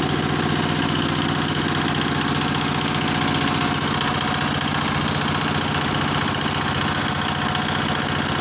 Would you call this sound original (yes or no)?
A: yes